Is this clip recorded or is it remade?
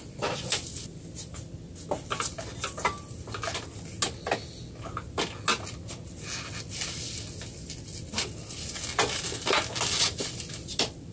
recorded